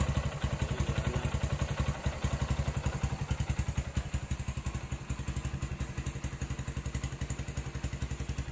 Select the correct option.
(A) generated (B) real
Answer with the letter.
B